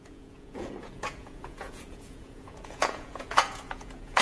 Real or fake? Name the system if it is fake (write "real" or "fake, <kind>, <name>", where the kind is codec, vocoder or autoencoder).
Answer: fake, vocoder, Vocos